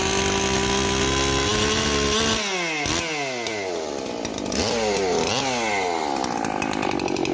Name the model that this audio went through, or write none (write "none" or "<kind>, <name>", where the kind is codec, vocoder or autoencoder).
none